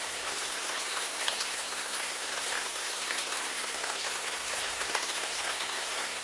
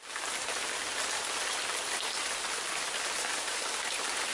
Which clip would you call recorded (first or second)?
second